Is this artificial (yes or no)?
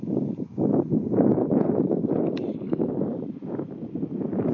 no